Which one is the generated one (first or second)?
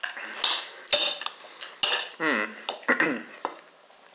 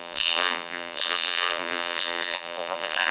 second